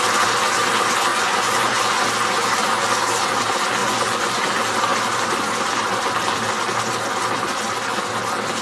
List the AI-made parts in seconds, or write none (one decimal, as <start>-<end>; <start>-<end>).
1.1-1.9; 3.8-4.4